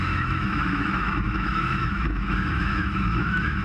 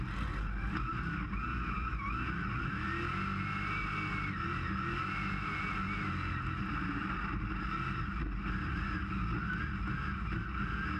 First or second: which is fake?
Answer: first